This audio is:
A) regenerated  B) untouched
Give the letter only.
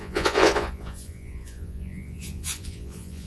A